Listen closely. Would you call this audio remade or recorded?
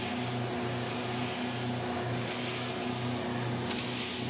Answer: recorded